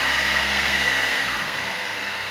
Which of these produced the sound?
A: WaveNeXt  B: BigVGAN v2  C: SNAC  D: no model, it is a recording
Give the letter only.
C